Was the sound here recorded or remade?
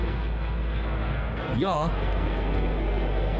remade